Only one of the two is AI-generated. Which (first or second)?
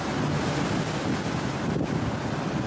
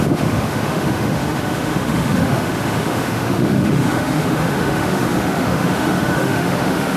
second